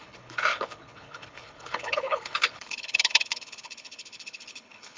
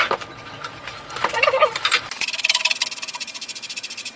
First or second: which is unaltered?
second